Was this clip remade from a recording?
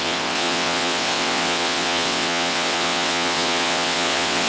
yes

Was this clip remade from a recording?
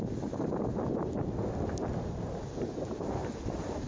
no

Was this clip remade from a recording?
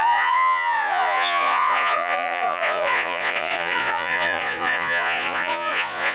yes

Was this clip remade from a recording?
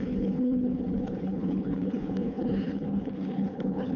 yes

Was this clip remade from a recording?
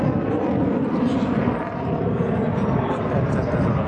no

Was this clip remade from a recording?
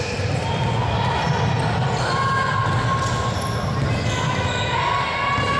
no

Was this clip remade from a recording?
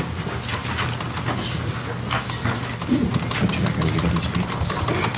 no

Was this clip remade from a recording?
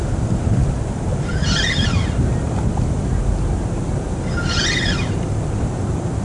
no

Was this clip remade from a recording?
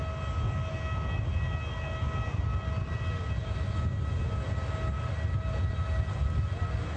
no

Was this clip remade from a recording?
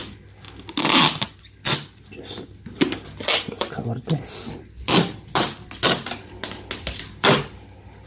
no